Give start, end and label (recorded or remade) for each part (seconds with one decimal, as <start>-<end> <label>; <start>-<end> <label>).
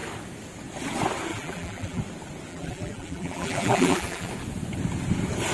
0.0-1.3 recorded; 1.3-2.0 remade; 2.0-2.5 recorded; 2.5-4.3 remade; 4.3-5.5 recorded